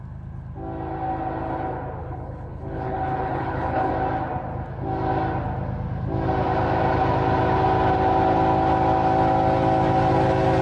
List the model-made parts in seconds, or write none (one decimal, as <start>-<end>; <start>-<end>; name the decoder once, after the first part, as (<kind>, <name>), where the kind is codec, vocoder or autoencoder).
2.0-3.9 (codec, HILCodec)